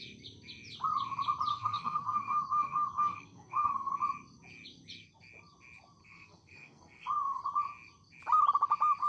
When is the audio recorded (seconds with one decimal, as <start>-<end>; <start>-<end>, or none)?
0.0-1.5; 3.9-6.0; 7.4-9.1